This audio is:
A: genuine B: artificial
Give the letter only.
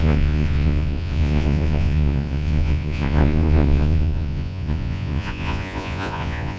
B